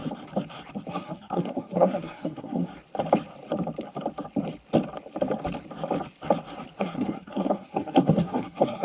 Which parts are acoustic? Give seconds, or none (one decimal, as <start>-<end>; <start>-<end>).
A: 0.0-0.9; 2.7-6.8